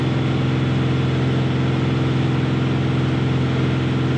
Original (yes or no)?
yes